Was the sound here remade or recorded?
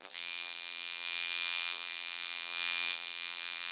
remade